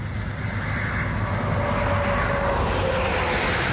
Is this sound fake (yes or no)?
no